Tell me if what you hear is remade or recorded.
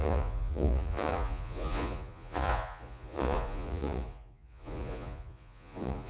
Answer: remade